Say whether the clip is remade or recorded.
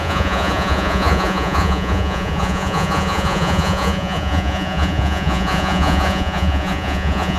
remade